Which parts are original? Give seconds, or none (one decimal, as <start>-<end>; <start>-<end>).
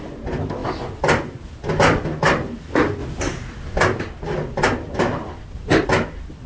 0.0-6.5